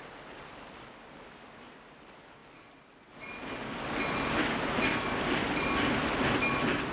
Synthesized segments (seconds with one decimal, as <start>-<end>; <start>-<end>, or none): none